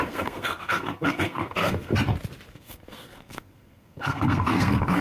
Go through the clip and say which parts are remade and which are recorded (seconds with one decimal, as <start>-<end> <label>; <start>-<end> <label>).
0.0-1.9 remade; 1.9-2.5 recorded; 2.5-5.0 remade